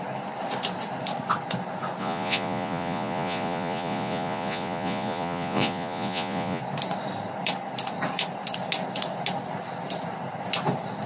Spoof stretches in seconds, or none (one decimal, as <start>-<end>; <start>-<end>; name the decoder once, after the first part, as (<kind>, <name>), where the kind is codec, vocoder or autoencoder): 2.0-6.6 (vocoder, Vocos)